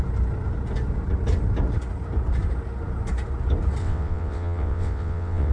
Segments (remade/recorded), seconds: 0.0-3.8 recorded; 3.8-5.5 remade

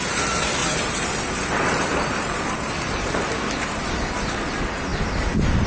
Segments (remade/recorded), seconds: 0.0-0.6 recorded; 0.6-3.1 remade; 3.1-5.7 recorded

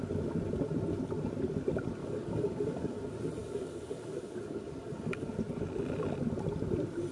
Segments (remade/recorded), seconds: 0.0-2.0 recorded; 2.0-3.0 remade; 3.0-3.4 recorded; 3.4-5.3 remade; 5.3-7.1 recorded

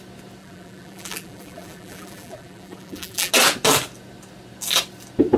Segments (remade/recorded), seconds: 0.0-0.4 recorded; 0.4-3.3 remade; 3.3-5.4 recorded

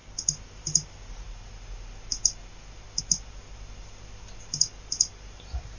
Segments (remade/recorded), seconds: 0.0-5.8 recorded

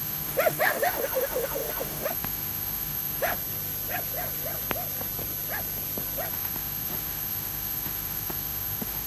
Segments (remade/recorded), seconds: 0.0-3.3 remade; 3.3-6.3 recorded; 6.3-9.1 remade

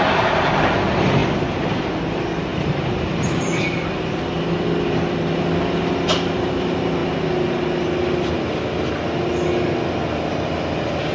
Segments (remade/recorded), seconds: 0.0-2.5 recorded; 2.5-3.6 remade; 3.6-11.1 recorded